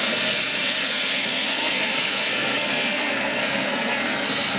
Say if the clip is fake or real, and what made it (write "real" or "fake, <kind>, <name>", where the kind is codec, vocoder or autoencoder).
fake, codec, SNAC